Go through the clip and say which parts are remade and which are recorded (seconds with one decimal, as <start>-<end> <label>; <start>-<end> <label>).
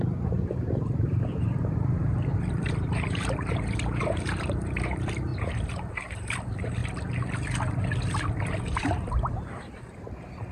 0.0-5.3 remade; 5.3-5.9 recorded; 5.9-6.8 remade; 6.8-8.6 recorded; 8.6-10.5 remade